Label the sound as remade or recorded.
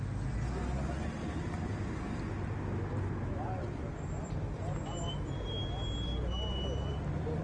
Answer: recorded